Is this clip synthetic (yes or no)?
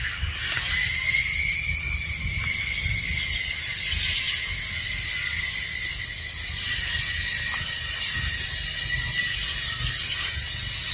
no